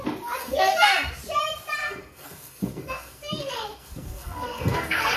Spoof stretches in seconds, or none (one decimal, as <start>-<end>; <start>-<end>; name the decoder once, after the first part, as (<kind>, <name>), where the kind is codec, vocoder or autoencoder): 0.4-1.1 (codec, SNAC); 1.8-5.2

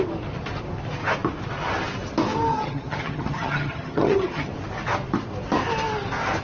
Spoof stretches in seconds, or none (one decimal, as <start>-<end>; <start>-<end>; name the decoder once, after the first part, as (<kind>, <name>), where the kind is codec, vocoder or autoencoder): 2.5-4.5 (vocoder, HiFi-GAN)

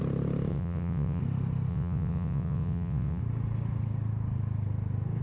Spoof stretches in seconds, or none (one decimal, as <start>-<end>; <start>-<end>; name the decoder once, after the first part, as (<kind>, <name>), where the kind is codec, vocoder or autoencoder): 0.5-1.2 (vocoder, WaveNeXt); 1.7-3.2

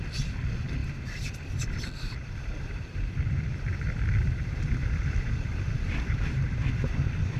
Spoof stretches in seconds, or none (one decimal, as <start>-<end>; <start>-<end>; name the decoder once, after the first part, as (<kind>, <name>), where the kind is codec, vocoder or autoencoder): 0.0-7.4 (vocoder, BigVGAN v2)

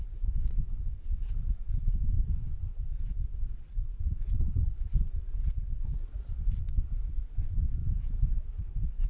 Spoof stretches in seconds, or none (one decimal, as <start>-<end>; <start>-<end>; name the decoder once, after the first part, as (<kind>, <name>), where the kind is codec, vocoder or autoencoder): 0.0-5.8 (vocoder, WaveNeXt); 6.6-9.1